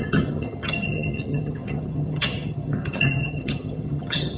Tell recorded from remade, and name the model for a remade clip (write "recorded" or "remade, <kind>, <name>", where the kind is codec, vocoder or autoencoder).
remade, vocoder, HiFi-GAN